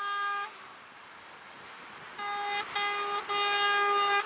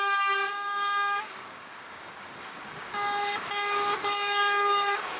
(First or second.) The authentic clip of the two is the first